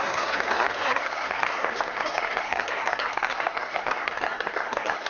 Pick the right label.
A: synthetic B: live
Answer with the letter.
A